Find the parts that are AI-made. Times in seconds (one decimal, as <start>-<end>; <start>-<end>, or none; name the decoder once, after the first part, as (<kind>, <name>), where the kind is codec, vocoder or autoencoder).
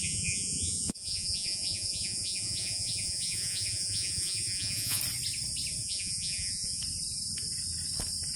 0.0-5.0 (vocoder, Vocos); 5.8-6.8